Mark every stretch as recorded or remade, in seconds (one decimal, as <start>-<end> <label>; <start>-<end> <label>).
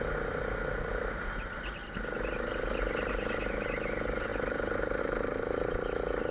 0.0-6.3 recorded